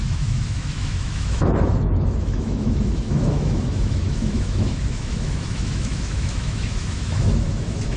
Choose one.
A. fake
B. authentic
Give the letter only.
A